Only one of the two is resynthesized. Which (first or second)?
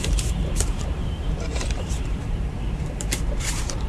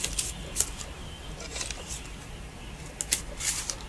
first